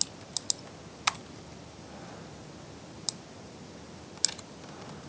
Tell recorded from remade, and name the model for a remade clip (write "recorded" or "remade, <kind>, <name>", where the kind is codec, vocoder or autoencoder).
recorded